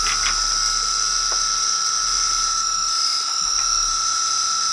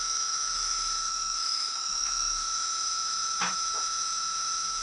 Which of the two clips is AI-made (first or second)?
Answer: second